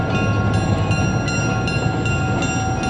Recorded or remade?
recorded